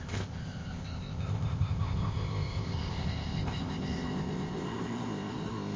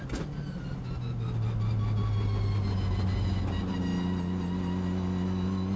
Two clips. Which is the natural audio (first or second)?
second